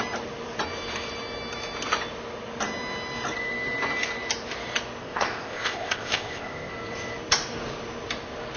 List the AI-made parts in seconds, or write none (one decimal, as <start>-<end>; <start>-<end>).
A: 5.0-6.7